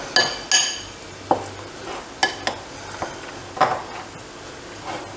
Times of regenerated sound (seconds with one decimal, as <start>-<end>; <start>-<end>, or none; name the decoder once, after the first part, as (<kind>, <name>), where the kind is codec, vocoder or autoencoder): none